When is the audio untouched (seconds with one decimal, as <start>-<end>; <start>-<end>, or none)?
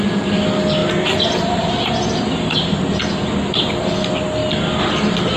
0.0-5.4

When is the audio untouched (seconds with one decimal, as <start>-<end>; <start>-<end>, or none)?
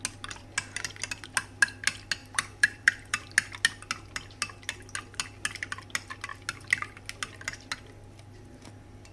0.0-2.2; 3.3-9.1